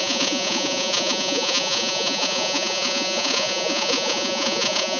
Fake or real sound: fake